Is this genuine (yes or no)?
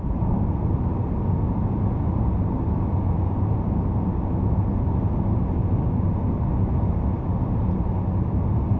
yes